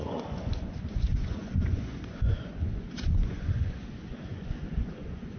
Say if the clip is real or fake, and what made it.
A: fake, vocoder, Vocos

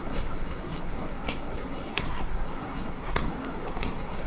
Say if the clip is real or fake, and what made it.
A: fake, codec, SNAC